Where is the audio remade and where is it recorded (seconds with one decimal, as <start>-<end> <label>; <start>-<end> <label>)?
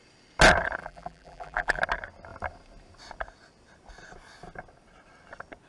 0.0-0.8 recorded; 0.8-1.8 remade; 1.8-5.7 recorded